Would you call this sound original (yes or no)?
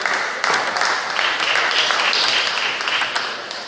yes